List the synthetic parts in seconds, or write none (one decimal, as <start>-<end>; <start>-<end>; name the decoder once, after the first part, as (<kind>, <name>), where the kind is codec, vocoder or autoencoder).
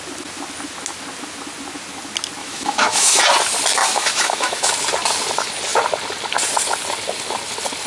2.4-3.2 (autoencoder, DAC-VAE); 3.8-4.7